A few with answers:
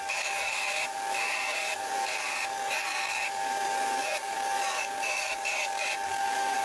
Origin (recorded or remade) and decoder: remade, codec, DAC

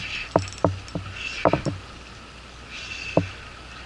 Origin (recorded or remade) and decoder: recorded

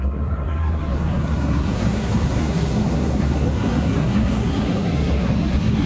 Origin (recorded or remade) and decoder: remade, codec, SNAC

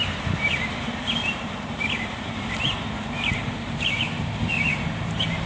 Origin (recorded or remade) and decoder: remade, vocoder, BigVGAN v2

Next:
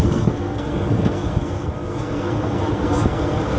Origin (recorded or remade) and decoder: remade, codec, SNAC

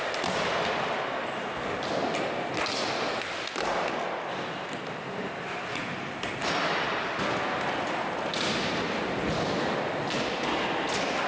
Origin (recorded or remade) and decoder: recorded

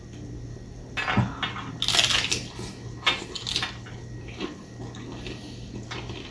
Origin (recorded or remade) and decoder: recorded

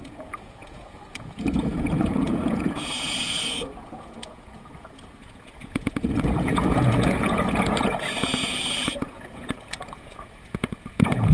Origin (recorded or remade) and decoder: remade, vocoder, Vocos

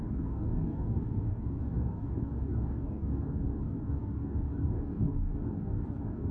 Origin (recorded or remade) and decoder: remade, codec, DAC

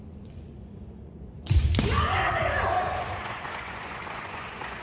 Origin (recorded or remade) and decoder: remade, vocoder, Vocos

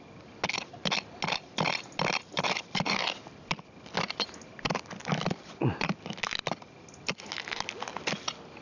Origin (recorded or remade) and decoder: recorded